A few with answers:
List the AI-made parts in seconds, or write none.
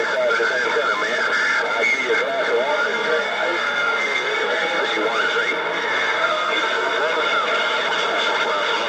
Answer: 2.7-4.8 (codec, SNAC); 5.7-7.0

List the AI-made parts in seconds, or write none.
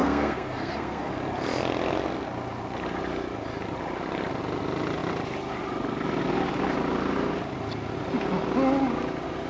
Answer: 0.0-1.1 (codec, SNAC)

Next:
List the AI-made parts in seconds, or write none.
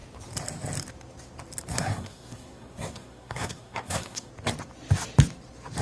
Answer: 1.7-4.3 (codec, SNAC)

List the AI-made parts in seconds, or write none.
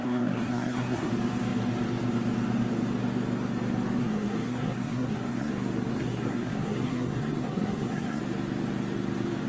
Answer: 0.0-1.1 (codec, SNAC); 4.0-5.5; 5.9-8.2